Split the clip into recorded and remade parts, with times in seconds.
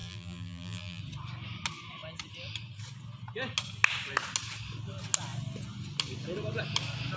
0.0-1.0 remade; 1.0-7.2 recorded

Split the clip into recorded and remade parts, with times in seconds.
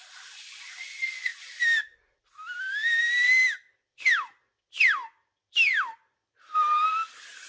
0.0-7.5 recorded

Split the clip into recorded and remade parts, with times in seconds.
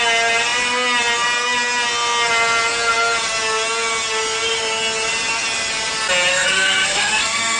0.0-6.3 recorded; 6.3-7.6 remade